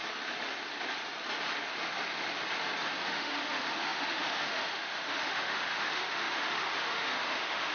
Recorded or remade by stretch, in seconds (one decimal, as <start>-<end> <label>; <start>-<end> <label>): 0.0-3.0 recorded; 3.0-7.7 remade